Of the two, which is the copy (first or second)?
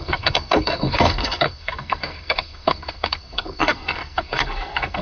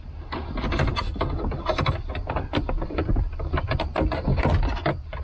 first